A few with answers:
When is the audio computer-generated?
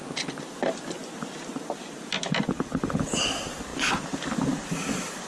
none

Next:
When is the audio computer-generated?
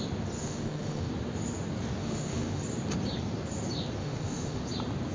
0.4-1.1 (autoencoder, DAC-VAE); 2.0-2.6; 4.0-4.6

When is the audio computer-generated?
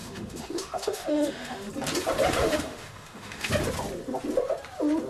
0.0-1.7 (autoencoder, DAC-VAE); 2.4-3.5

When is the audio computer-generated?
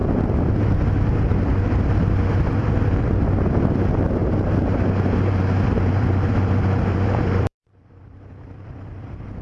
1.9-4.2 (vocoder, BigVGAN v2); 5.6-9.4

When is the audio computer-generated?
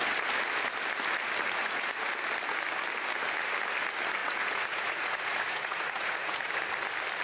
1.6-2.1 (vocoder, Vocos); 4.2-6.5